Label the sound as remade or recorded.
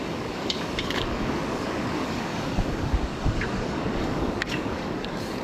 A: remade